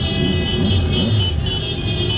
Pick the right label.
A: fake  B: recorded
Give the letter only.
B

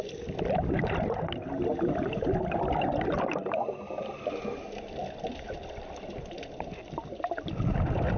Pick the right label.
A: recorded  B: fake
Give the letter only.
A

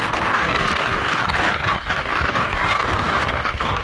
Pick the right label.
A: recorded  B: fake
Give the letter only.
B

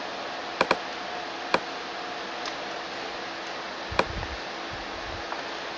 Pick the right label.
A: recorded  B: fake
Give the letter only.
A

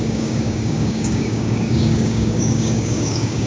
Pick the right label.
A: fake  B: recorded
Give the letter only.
A